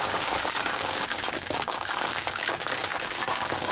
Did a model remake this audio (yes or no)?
yes